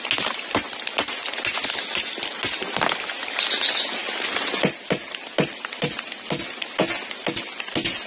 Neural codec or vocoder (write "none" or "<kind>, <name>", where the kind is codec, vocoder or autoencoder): none